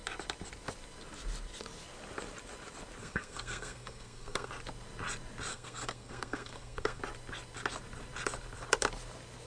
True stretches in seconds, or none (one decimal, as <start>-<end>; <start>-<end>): 0.0-3.0; 4.5-5.5; 7.0-9.5